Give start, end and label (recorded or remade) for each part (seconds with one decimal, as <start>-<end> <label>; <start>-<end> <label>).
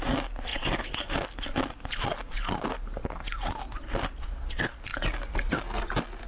0.0-6.3 recorded